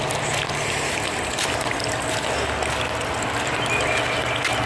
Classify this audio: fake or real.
real